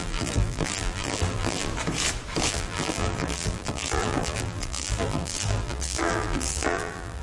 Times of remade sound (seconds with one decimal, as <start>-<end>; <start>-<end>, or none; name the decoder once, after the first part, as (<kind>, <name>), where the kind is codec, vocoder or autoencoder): 0.0-1.7 (vocoder, BigVGAN v2); 2.5-7.2